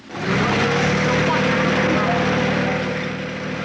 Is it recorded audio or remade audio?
recorded